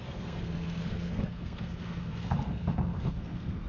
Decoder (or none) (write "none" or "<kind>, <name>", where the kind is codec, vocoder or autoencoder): codec, SNAC